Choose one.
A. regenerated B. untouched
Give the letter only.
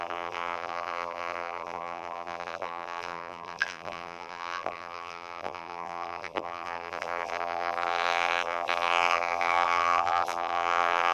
A